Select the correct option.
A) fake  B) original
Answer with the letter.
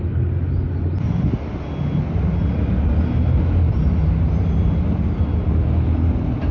B